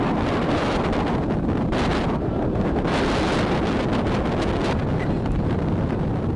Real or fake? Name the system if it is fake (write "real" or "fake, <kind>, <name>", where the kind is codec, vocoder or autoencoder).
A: real